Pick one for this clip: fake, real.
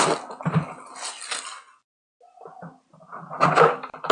real